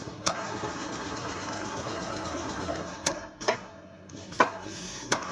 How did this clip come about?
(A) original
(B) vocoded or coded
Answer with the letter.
B